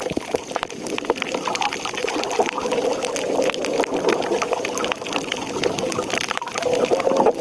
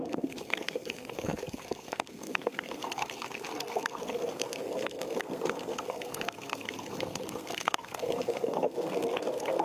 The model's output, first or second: second